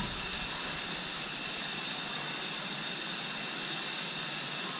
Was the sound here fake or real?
real